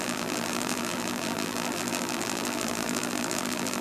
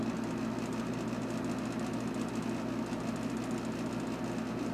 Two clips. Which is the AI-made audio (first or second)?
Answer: first